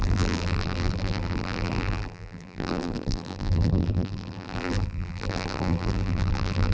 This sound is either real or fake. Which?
fake